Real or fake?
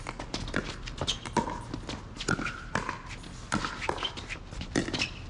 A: real